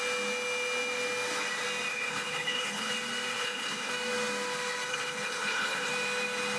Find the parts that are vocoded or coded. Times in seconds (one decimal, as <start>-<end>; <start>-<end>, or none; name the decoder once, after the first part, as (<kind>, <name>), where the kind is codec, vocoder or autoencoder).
1.9-2.9 (codec, HILCodec); 3.3-3.9; 4.9-5.9